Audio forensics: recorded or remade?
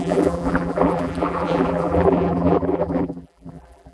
remade